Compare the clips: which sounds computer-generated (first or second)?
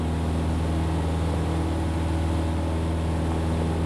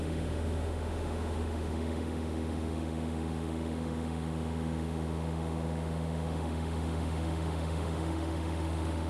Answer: second